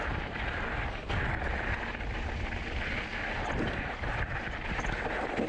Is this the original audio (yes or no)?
yes